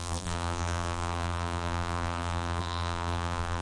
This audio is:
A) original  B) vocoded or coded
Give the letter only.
B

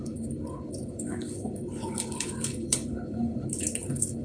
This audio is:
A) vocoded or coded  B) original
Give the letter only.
A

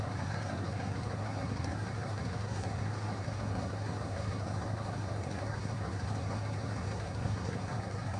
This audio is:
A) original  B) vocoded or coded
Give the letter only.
B